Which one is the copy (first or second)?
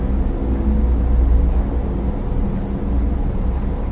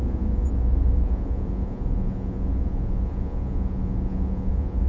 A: second